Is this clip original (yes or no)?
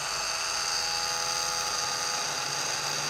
yes